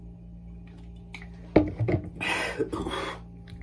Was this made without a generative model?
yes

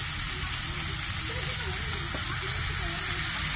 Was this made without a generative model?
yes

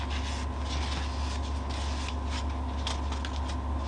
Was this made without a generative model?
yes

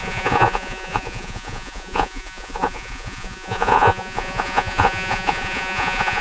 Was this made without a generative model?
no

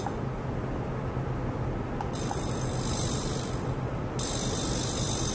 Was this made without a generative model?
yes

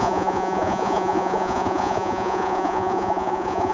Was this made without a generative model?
no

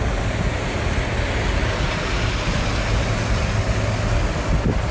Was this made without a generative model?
yes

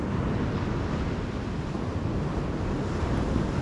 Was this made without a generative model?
yes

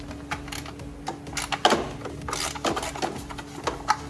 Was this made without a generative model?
yes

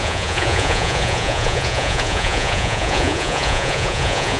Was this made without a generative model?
no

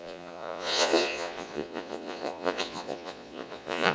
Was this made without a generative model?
no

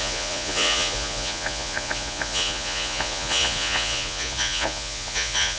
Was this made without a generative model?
no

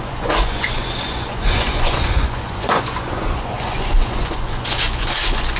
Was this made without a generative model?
no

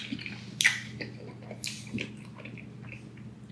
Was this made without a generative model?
yes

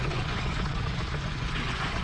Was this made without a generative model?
no